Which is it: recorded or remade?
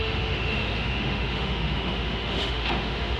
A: remade